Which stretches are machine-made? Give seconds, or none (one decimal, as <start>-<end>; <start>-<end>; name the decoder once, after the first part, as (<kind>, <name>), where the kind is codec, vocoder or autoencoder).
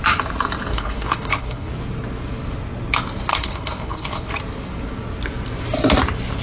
0.7-1.7 (codec, HILCodec); 3.3-4.3